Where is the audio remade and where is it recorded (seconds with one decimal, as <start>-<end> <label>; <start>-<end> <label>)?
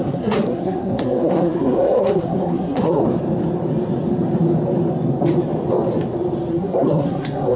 0.0-3.0 remade; 3.0-6.5 recorded; 6.5-7.6 remade